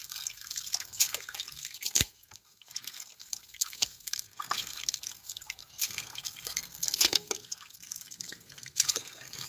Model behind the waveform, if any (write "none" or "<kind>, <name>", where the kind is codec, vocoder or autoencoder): codec, SNAC